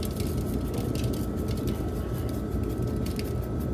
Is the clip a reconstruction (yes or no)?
no